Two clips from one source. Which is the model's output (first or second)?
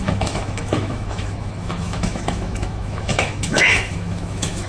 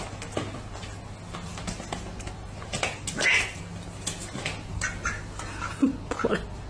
first